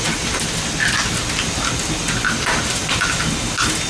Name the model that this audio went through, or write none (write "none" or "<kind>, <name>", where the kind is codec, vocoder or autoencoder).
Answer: none